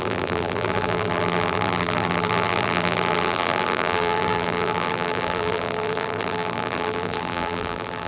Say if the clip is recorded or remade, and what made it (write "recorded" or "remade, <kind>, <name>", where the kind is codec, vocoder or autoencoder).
remade, vocoder, BigVGAN v2